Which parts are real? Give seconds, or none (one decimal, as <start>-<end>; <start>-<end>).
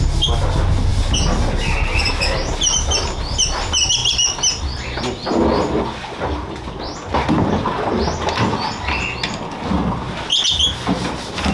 0.0-11.5